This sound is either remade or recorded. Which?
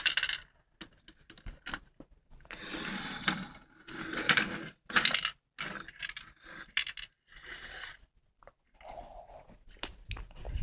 recorded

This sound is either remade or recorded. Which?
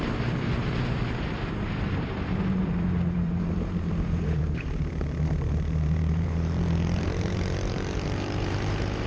remade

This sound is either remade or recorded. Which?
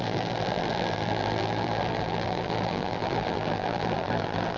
remade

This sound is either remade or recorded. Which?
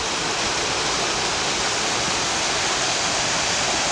recorded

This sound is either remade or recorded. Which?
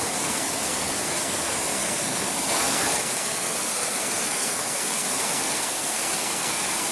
remade